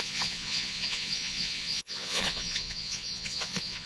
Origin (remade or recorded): remade